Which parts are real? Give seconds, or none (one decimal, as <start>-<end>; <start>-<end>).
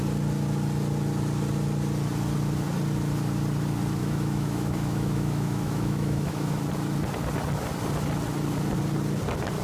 0.0-4.0; 6.6-9.6